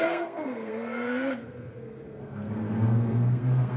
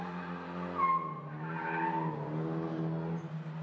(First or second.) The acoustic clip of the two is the second